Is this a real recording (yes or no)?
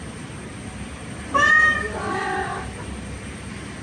yes